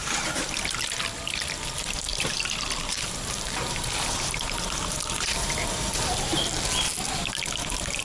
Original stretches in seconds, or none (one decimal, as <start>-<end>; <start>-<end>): 0.7-2.1; 6.4-8.0